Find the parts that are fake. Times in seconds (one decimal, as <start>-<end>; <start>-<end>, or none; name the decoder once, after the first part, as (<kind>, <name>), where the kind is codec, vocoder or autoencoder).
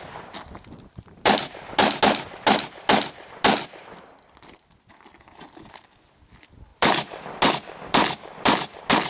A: none